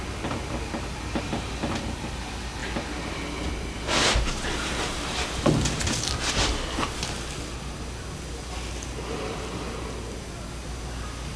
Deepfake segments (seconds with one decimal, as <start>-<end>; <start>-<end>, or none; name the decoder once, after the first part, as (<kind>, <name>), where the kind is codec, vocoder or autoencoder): none